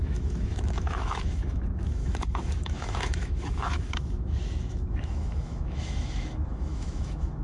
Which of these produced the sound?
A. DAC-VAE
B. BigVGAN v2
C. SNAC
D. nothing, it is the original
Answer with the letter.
A